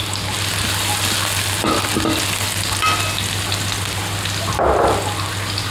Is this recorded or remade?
recorded